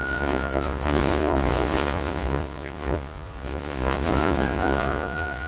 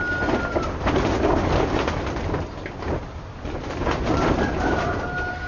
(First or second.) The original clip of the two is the second